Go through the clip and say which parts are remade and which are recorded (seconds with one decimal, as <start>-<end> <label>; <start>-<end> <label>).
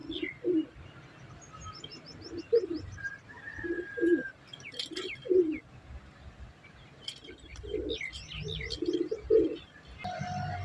0.0-10.6 recorded